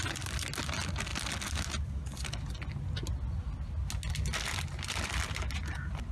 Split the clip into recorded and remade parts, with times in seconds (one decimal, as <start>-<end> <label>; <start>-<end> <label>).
0.0-6.1 recorded